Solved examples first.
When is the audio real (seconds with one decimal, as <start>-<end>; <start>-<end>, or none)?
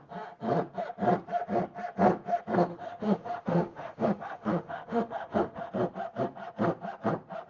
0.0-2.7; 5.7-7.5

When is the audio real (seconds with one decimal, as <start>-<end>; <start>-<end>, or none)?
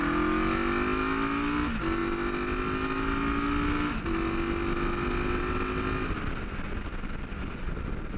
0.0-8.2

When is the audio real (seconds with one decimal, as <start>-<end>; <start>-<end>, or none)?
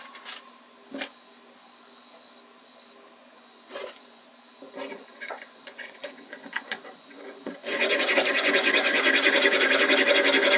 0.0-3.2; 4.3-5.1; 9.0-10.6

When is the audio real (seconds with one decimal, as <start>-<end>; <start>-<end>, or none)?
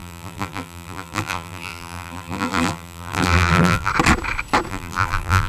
3.9-4.7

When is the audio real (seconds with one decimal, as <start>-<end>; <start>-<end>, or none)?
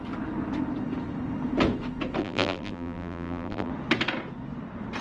0.0-2.2; 3.7-5.0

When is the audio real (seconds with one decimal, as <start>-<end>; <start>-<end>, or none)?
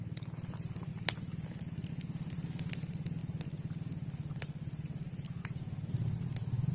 0.0-6.7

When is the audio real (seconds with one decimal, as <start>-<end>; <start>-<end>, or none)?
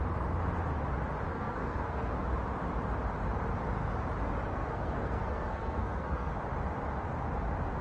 0.0-1.3; 2.1-4.5; 6.3-7.8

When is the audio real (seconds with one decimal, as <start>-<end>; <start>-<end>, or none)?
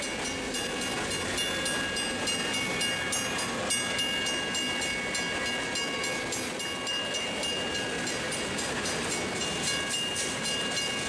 0.0-11.1